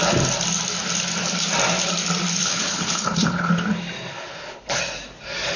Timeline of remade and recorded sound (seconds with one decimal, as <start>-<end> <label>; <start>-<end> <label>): 0.0-2.4 recorded; 2.4-3.5 remade; 3.5-4.1 recorded; 4.1-4.8 remade; 4.8-5.6 recorded